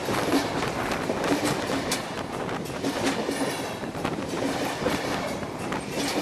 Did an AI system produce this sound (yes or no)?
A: yes